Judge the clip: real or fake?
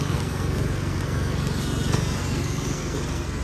fake